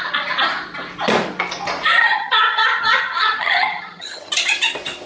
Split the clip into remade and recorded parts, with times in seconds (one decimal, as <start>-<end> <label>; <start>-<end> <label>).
0.0-2.0 recorded; 2.0-4.3 remade; 4.3-5.1 recorded